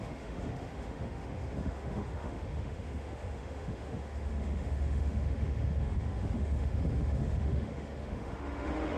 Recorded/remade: remade